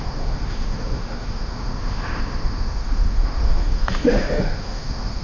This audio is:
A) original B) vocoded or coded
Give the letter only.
B